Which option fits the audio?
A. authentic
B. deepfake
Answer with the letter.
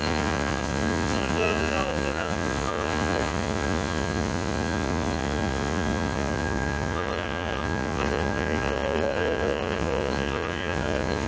B